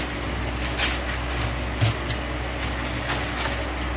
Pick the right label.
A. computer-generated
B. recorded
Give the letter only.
B